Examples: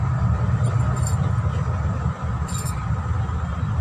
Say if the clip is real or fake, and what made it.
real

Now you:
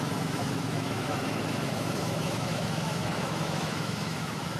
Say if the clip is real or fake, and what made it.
fake, autoencoder, DAC-VAE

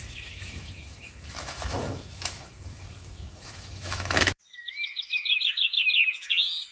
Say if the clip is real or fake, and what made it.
fake, autoencoder, DAC-VAE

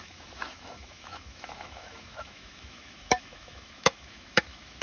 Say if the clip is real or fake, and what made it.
fake, autoencoder, DAC-VAE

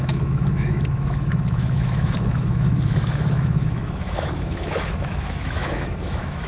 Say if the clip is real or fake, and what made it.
fake, autoencoder, DAC-VAE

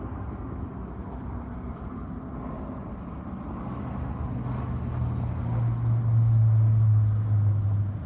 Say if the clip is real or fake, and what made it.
real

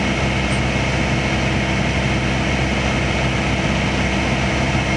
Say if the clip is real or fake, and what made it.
real